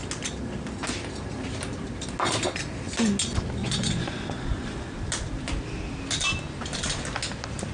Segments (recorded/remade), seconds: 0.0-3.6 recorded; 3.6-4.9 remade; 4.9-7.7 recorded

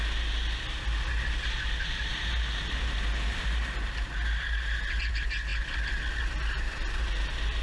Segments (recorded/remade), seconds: 0.0-7.6 recorded

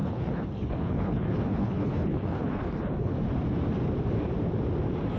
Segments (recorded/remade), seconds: 0.0-3.1 remade; 3.1-5.2 recorded

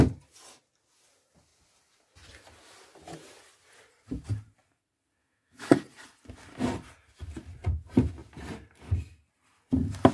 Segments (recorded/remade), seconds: 0.0-5.2 recorded; 5.2-5.7 remade; 5.7-10.1 recorded